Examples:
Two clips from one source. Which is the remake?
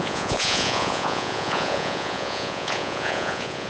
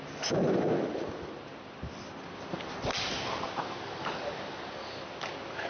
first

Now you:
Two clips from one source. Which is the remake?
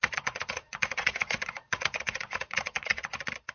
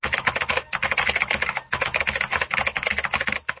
first